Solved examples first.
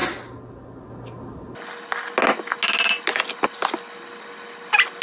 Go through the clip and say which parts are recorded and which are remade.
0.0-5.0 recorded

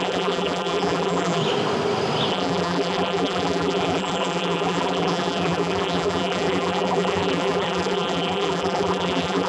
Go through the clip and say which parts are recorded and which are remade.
0.0-1.4 remade; 1.4-2.3 recorded; 2.3-9.5 remade

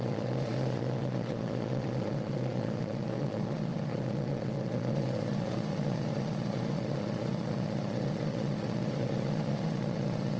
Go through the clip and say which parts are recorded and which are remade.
0.0-10.4 remade

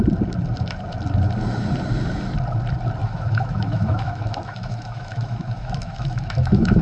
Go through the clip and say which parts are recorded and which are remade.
0.0-3.0 recorded; 3.0-6.8 remade

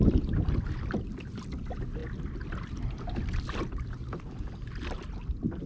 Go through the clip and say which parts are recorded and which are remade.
0.0-5.7 recorded

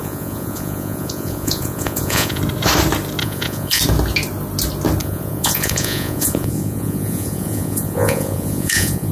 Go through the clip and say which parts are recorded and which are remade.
0.0-2.4 remade; 2.4-3.2 recorded; 3.2-3.8 remade; 3.8-5.0 recorded; 5.0-9.1 remade